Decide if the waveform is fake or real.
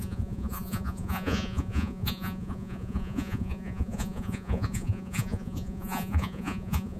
fake